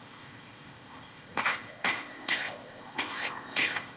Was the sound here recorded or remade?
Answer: remade